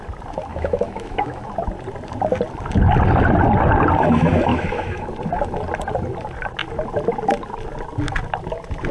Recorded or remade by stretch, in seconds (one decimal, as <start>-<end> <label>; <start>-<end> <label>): 0.0-0.5 recorded; 0.5-1.5 remade; 1.5-4.5 recorded; 4.5-5.1 remade; 5.1-8.9 recorded